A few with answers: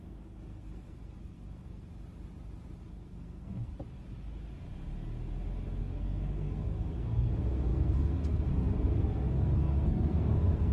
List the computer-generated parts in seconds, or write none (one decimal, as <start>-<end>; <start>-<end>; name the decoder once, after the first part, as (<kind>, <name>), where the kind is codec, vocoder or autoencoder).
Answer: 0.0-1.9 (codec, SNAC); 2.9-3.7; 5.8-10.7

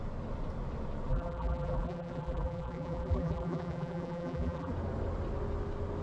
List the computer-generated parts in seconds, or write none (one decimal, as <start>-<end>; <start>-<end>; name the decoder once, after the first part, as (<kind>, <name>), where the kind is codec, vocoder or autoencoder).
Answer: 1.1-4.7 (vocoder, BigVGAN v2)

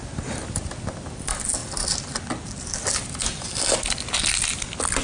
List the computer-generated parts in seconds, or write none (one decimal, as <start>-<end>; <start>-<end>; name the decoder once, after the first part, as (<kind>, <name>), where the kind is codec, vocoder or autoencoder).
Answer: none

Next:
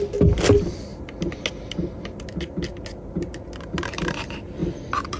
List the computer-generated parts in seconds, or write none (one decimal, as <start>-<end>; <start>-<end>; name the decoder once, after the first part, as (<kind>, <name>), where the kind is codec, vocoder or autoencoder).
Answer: none

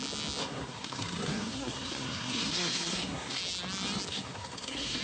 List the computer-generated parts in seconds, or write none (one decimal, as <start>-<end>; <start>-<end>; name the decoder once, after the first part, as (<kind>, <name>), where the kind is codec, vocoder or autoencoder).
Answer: 0.4-3.4 (codec, SNAC); 4.1-5.0